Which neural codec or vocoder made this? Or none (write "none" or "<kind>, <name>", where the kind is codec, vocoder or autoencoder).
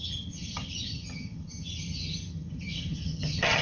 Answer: vocoder, HiFi-GAN